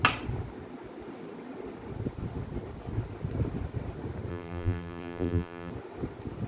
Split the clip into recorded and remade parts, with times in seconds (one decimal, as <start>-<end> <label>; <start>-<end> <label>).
0.0-4.3 recorded; 4.3-5.7 remade; 5.7-6.5 recorded